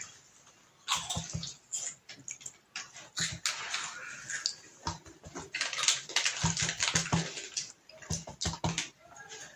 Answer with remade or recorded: recorded